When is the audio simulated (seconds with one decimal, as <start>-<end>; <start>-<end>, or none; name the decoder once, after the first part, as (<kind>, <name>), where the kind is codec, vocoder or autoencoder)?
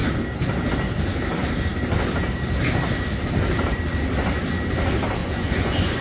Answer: 5.2-6.0 (vocoder, Vocos)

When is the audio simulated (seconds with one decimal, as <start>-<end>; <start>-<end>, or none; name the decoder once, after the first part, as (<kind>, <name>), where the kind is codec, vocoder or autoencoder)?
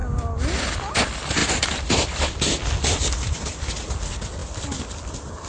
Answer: none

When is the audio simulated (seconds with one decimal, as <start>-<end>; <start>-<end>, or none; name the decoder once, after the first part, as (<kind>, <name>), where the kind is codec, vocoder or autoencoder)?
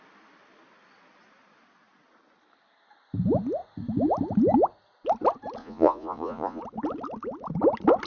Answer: 5.6-6.6 (vocoder, Vocos)